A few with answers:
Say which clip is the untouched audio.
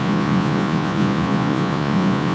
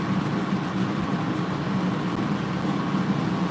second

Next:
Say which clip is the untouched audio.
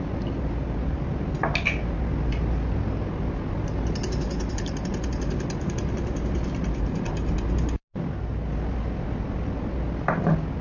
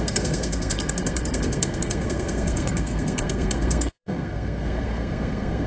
first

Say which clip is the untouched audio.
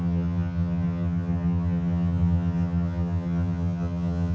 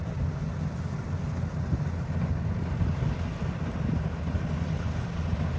second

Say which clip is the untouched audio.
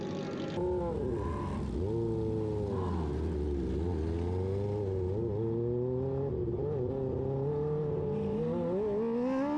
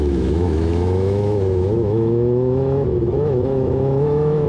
first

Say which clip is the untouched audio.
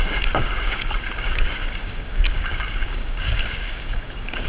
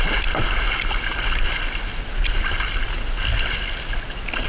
second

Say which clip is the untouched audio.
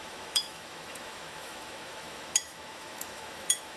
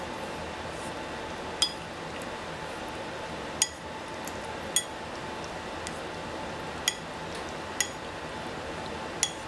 second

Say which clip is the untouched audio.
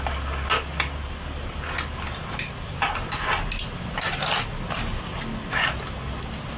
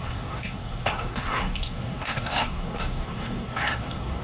first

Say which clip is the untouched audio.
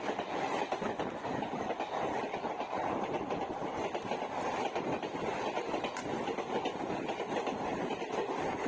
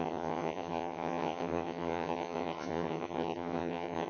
first